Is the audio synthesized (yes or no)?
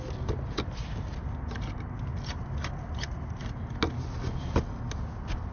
no